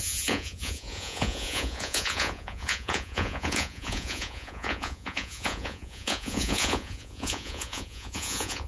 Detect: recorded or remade remade